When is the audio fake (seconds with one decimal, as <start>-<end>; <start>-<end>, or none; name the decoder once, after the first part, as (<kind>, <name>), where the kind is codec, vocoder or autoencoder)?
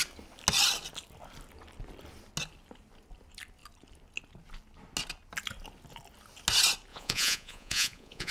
6.9-8.3 (vocoder, Vocos)